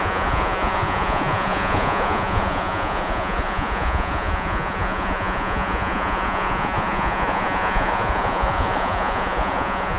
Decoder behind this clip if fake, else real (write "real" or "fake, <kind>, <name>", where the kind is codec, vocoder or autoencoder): fake, vocoder, Vocos